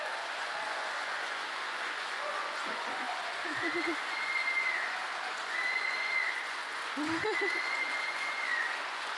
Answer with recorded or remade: remade